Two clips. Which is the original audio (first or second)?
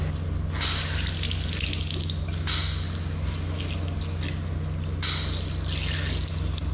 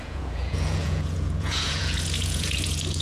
first